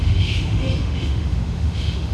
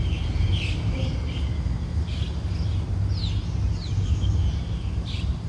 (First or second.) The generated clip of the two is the first